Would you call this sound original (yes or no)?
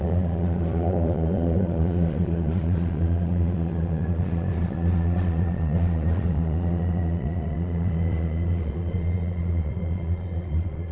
no